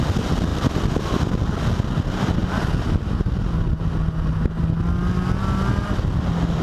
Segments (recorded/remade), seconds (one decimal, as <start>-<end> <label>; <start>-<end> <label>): 0.0-0.5 recorded; 0.5-1.2 remade; 1.2-6.6 recorded